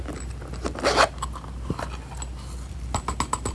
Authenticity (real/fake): real